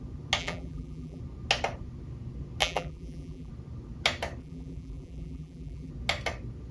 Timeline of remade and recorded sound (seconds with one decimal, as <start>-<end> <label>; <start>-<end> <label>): 0.0-0.4 recorded; 0.4-1.2 remade; 1.2-2.6 recorded; 2.6-3.5 remade; 3.5-4.4 recorded; 4.4-5.9 remade; 5.9-6.7 recorded